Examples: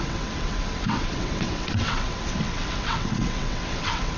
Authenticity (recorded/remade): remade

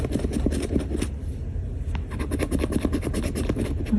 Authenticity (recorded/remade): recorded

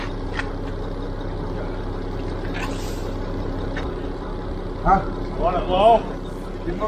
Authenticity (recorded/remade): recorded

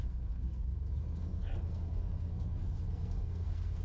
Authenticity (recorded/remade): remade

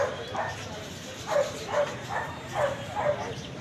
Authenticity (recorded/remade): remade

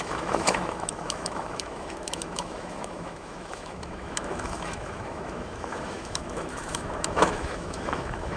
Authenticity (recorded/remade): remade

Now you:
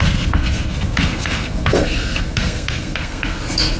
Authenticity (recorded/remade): remade